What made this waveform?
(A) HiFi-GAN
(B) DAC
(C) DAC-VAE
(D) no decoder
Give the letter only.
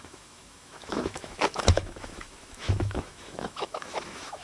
C